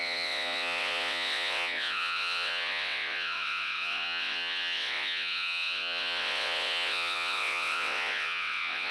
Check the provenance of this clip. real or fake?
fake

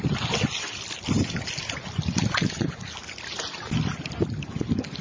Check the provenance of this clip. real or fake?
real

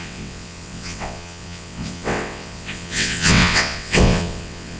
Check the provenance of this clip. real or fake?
fake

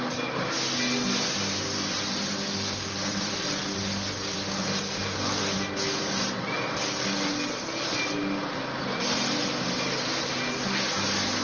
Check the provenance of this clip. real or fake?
real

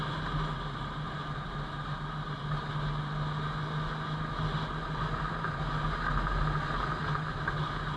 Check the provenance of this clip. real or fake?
real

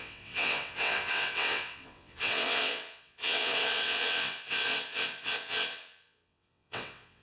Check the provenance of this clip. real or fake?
fake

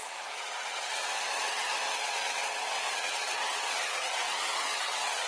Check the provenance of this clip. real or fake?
fake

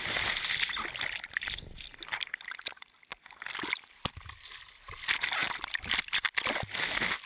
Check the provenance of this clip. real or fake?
real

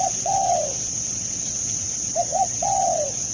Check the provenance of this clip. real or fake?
fake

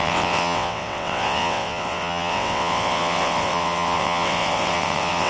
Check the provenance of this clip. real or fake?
fake